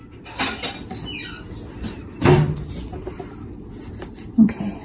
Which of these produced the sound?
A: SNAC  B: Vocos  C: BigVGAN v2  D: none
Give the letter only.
D